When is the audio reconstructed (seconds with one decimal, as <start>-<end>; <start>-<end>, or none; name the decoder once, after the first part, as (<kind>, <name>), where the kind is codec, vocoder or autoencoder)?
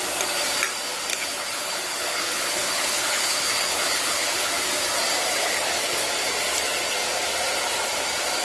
1.1-4.5 (codec, HILCodec); 5.4-6.0